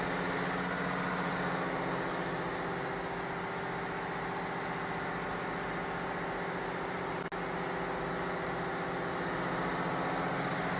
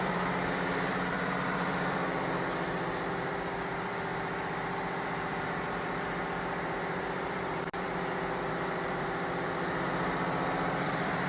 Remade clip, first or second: second